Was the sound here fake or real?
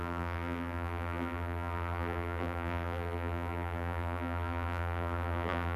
fake